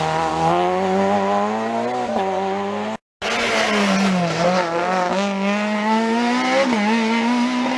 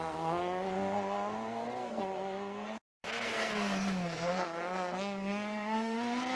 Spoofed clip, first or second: second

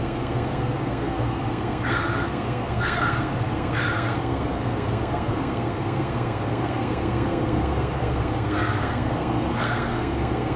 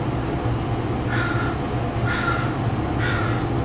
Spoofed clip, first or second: first